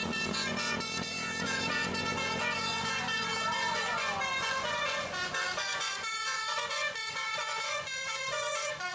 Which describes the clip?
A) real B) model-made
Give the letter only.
B